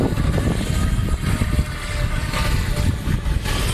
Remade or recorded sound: recorded